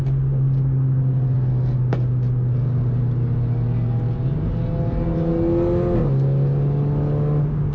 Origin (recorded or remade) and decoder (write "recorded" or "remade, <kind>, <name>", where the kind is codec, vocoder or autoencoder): recorded